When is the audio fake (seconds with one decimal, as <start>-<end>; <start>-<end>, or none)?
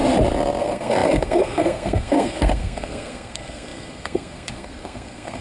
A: 0.6-5.4